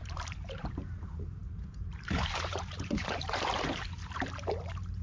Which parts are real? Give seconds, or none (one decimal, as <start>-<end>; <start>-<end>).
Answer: none